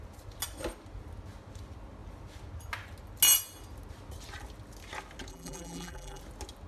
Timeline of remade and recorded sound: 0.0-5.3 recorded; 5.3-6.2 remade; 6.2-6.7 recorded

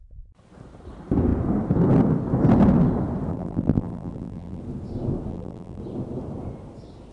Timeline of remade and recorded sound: 0.0-3.3 recorded; 3.3-4.6 remade; 4.6-5.3 recorded; 5.3-5.8 remade; 5.8-7.1 recorded

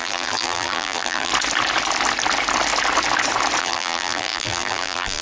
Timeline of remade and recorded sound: 0.0-1.3 remade; 1.3-3.6 recorded; 3.6-5.2 remade

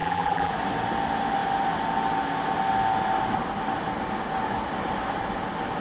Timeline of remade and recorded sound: 0.0-0.5 remade; 0.5-5.8 recorded

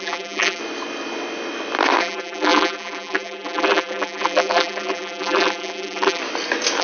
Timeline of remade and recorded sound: 0.0-0.6 remade; 0.6-2.0 recorded; 2.0-6.2 remade; 6.2-6.8 recorded